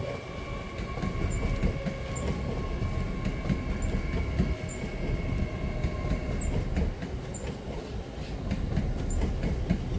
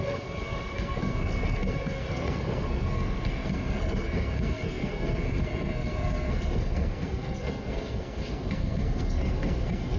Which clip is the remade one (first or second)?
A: second